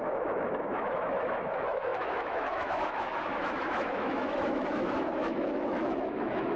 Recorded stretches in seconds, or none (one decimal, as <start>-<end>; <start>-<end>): none